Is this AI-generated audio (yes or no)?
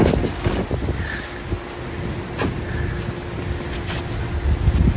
no